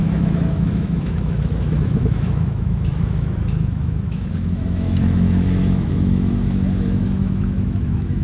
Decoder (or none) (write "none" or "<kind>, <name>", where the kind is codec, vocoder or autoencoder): autoencoder, DAC-VAE